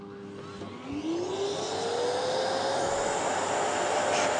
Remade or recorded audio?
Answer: recorded